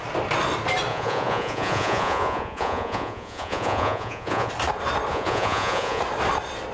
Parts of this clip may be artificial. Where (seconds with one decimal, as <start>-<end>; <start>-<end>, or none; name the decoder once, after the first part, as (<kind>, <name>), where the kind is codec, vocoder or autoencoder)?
0.9-4.5 (vocoder, Vocos); 5.1-6.0